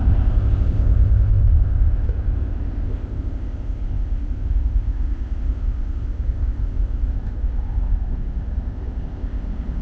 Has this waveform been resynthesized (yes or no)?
yes